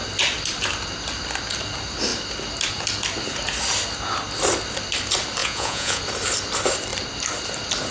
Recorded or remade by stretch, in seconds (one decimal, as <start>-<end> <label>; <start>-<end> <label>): 0.0-5.4 recorded; 5.4-6.0 remade; 6.0-7.9 recorded